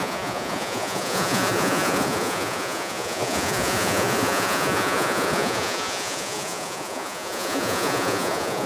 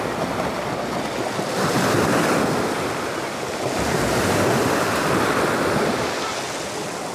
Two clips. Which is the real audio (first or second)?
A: second